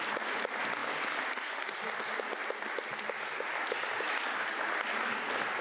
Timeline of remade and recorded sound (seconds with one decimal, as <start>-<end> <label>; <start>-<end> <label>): 0.0-5.6 recorded

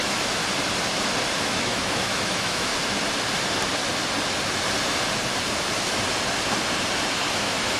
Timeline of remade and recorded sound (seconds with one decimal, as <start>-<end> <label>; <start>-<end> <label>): 0.0-0.4 remade; 0.4-1.4 recorded; 1.4-2.7 remade; 2.7-7.3 recorded; 7.3-7.8 remade

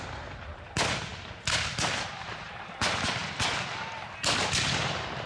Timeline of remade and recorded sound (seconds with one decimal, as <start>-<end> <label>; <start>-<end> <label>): 0.0-1.1 remade; 1.1-2.3 recorded; 2.3-5.3 remade